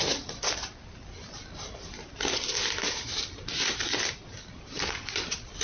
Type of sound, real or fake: real